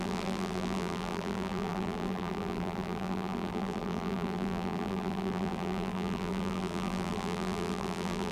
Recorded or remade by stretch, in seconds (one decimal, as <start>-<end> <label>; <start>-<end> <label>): 0.0-8.3 remade